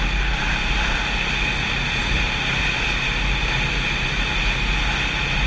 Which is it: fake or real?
real